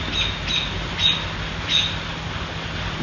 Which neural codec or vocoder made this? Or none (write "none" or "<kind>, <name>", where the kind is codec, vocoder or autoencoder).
none